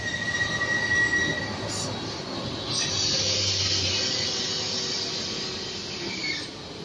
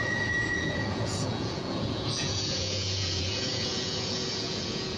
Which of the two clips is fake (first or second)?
second